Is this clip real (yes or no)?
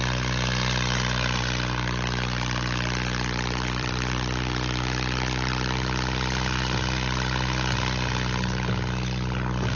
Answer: no